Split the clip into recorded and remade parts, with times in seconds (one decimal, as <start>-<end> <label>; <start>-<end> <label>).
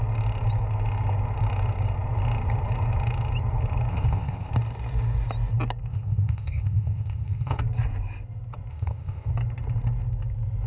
0.0-3.9 recorded; 3.9-4.5 remade; 4.5-5.9 recorded; 5.9-7.6 remade; 7.6-8.7 recorded; 8.7-9.3 remade; 9.3-10.7 recorded